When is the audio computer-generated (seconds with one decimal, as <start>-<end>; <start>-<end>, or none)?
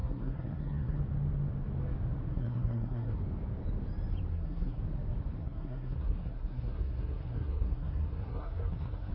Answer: 0.0-1.0; 2.3-3.2; 4.3-4.8; 5.4-9.1